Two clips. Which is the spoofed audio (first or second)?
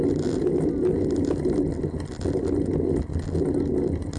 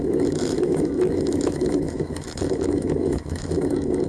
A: second